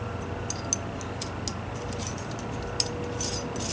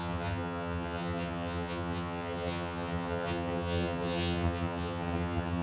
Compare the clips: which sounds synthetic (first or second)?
second